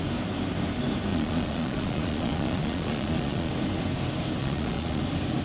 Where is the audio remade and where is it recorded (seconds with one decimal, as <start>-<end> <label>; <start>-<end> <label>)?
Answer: 0.0-1.1 recorded; 1.1-3.5 remade; 3.5-4.4 recorded; 4.4-5.0 remade; 5.0-5.4 recorded